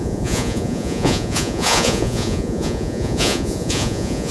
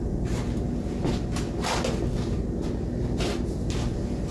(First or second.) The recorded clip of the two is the second